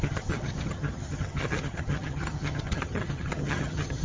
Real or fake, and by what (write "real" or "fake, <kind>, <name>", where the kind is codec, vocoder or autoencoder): fake, vocoder, HiFi-GAN